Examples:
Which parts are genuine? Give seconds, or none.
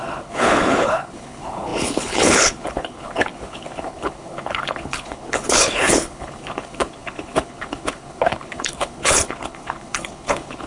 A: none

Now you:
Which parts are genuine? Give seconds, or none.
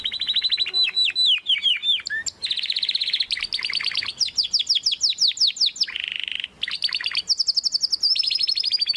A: 0.0-9.0